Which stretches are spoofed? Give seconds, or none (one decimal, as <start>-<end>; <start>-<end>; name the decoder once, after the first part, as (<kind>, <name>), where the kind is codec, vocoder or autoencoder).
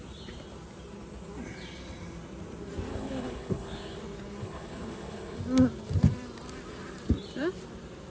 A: 2.9-4.0 (codec, HILCodec); 4.4-5.4